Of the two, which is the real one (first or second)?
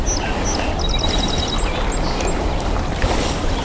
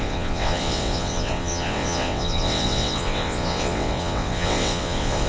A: first